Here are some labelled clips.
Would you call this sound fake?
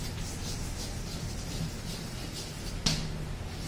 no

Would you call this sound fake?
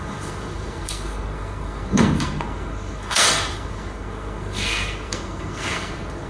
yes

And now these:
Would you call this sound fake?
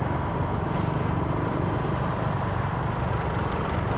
yes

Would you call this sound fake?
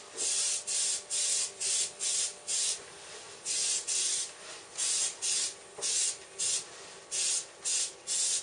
no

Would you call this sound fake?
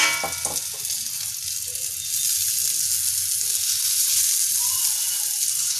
no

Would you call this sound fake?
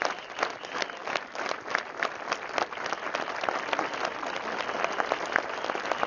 no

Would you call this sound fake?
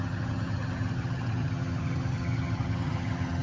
yes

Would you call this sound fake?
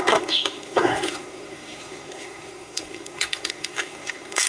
yes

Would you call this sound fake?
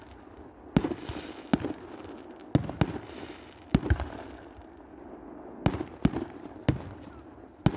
no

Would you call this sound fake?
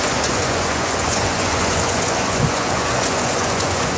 yes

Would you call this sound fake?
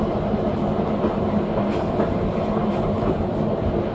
no